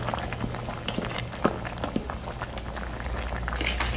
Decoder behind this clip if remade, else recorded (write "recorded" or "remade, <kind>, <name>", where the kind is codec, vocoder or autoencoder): recorded